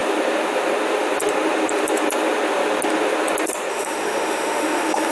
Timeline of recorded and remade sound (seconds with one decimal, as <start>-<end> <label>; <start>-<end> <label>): 0.0-3.7 recorded; 3.7-5.1 remade